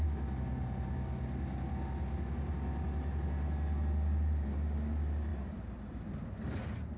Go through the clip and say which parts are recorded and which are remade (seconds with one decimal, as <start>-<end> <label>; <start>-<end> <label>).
0.0-5.3 recorded; 5.3-6.5 remade; 6.5-7.0 recorded